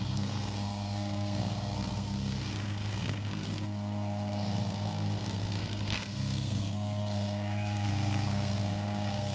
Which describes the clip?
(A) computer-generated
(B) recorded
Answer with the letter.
A